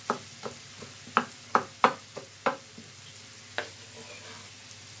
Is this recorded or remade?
recorded